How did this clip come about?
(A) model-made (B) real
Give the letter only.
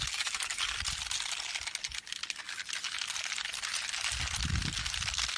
B